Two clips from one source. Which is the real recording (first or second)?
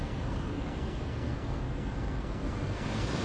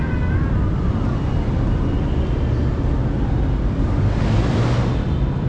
second